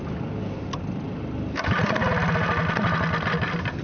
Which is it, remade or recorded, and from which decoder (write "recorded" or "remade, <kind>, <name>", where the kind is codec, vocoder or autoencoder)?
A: recorded